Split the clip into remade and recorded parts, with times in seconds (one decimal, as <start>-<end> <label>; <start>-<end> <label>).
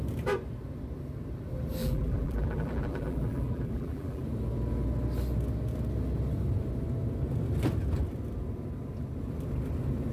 0.0-1.8 recorded; 1.8-4.2 remade; 4.2-10.1 recorded